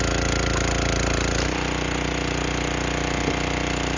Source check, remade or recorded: recorded